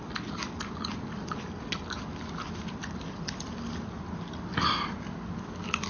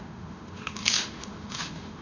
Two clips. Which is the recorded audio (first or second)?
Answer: first